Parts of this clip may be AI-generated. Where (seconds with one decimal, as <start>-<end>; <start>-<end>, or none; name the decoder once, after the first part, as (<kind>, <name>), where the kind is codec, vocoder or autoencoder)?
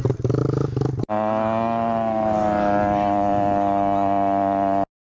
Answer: none